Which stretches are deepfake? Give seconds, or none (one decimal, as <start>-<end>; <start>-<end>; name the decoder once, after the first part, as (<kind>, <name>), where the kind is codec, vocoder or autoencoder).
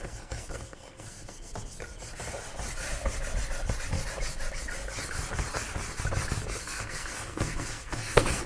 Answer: 0.0-1.5 (codec, SNAC); 6.6-8.5